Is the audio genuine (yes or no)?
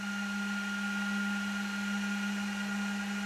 yes